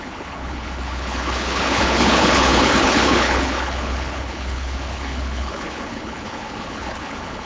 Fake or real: fake